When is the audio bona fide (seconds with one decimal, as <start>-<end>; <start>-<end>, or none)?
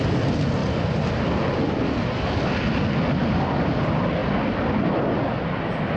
0.0-6.0